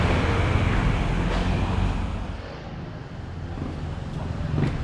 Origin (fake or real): real